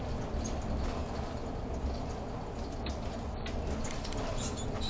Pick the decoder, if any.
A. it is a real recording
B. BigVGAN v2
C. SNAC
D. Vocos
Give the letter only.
A